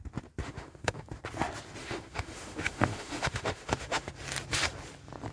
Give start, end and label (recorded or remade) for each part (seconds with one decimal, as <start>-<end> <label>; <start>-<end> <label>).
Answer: 0.0-0.4 recorded; 0.4-1.2 remade; 1.2-1.8 recorded; 1.8-4.1 remade; 4.1-5.3 recorded